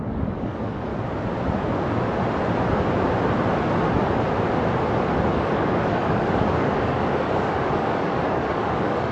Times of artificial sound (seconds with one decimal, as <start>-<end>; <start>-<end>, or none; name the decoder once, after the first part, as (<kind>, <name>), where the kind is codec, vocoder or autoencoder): 0.0-0.9 (codec, DAC); 5.3-9.1